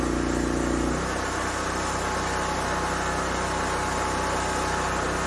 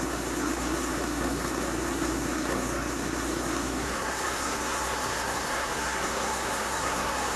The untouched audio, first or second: first